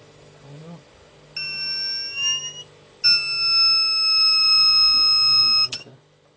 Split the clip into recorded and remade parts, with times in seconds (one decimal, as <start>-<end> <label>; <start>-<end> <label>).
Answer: 0.0-6.4 recorded